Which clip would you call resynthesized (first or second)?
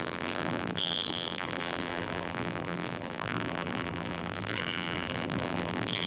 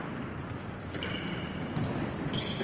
first